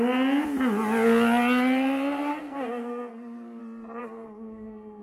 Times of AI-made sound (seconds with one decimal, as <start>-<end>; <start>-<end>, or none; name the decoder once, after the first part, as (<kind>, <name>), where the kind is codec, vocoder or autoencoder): 2.3-3.6 (codec, SNAC); 4.0-5.0